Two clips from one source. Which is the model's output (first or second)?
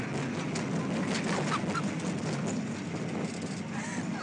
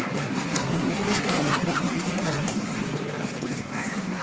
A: second